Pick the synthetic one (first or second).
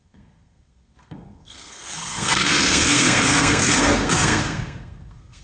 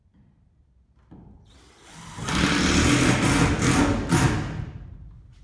first